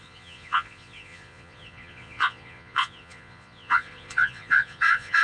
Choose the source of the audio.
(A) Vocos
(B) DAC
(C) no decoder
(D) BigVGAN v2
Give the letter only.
A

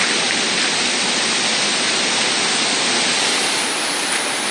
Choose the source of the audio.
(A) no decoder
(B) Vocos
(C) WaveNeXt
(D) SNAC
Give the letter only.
A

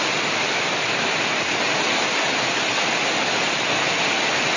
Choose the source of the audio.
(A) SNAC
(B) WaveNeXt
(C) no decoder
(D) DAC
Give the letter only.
C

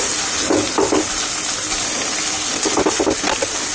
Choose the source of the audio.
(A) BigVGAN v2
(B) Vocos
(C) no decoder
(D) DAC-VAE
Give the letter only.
C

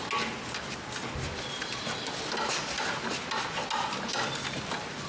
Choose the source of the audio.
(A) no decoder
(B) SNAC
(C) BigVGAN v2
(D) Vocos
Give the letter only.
A